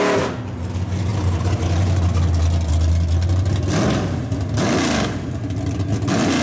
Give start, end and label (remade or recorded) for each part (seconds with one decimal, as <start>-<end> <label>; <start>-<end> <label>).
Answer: 0.0-1.1 recorded; 1.1-1.6 remade; 1.6-6.4 recorded